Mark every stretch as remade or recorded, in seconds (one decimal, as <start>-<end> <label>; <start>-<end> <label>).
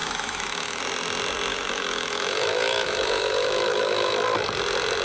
0.0-0.8 remade; 0.8-1.5 recorded; 1.5-4.1 remade; 4.1-5.0 recorded